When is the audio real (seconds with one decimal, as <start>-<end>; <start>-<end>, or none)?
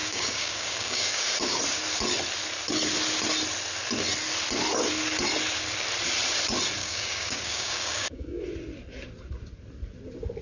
1.6-6.8; 8.4-10.4